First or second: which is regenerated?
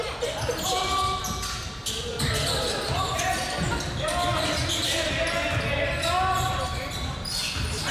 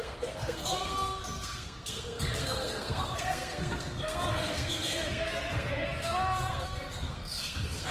second